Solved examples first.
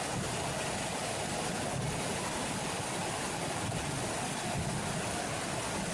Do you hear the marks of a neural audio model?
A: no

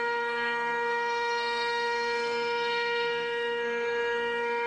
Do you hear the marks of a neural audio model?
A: yes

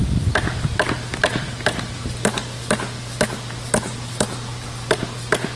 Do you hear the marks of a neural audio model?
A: no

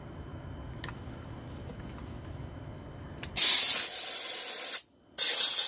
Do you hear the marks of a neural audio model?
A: no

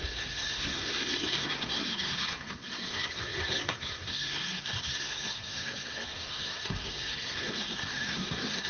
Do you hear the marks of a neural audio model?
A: yes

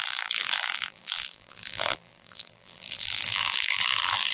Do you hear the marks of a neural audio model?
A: yes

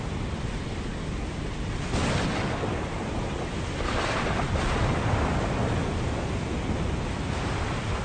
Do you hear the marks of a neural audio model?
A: no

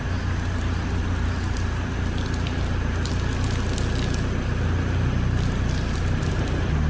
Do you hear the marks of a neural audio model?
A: no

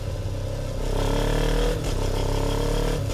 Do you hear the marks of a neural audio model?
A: no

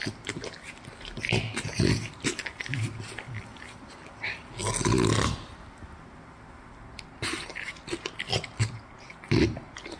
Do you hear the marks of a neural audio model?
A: no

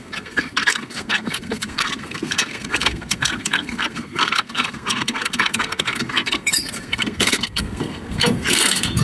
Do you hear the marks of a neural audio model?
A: yes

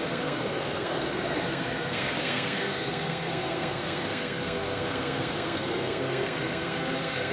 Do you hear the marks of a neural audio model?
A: yes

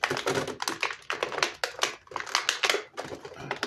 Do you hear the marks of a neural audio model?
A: no